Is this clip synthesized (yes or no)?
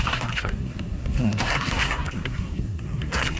yes